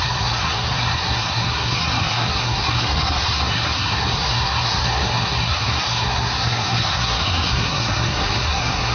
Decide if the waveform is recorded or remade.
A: remade